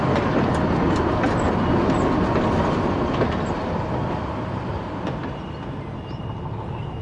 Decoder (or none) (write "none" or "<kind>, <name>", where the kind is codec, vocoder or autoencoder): none